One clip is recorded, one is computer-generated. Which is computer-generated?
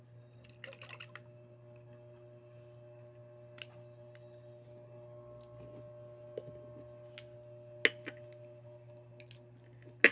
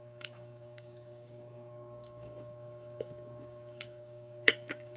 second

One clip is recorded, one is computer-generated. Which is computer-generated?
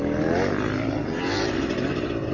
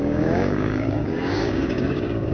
second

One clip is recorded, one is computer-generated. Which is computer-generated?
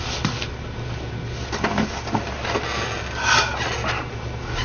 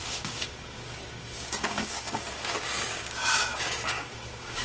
second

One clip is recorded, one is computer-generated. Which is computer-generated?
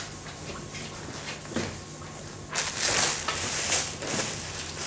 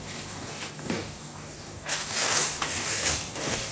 second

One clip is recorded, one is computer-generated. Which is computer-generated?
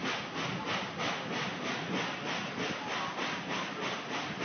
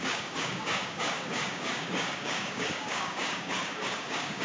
second